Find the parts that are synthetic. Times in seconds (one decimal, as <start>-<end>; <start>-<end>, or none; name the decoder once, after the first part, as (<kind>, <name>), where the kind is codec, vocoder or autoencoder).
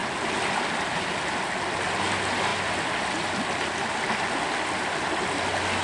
none